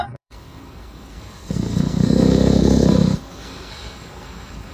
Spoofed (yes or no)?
yes